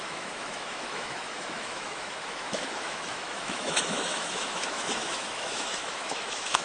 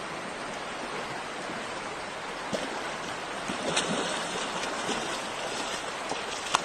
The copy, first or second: first